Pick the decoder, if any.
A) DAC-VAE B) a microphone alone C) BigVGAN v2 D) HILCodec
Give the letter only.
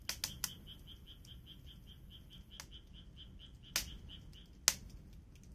B